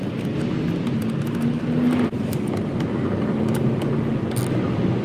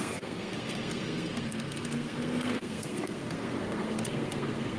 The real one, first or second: first